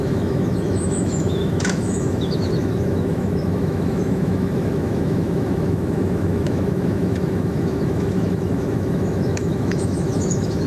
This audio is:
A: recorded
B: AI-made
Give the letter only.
B